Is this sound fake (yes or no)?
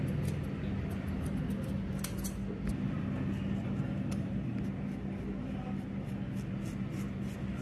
no